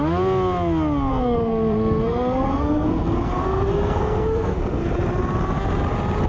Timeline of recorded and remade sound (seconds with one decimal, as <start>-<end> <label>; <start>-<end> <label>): 0.0-1.1 recorded; 1.1-4.9 remade; 4.9-6.3 recorded